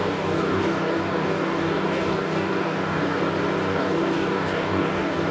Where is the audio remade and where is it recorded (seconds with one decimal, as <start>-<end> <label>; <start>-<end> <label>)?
0.0-3.2 remade; 3.2-3.7 recorded; 3.7-5.3 remade